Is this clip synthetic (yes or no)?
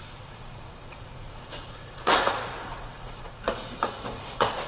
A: yes